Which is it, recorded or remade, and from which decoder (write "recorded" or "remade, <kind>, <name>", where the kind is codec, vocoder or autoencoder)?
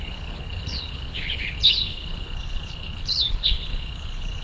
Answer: remade, codec, HILCodec